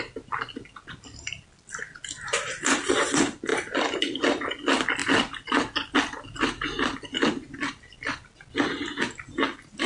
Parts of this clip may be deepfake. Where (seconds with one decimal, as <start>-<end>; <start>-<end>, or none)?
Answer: none